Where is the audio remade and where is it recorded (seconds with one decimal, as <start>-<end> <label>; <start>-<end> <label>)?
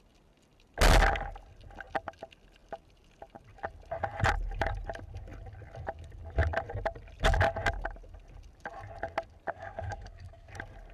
0.0-9.5 recorded; 9.5-10.5 remade; 10.5-10.9 recorded